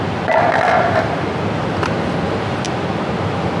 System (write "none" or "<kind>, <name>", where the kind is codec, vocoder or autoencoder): none